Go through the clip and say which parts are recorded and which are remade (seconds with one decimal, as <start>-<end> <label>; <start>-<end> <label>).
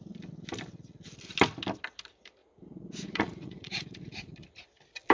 0.0-2.4 recorded; 2.4-4.3 remade; 4.3-5.1 recorded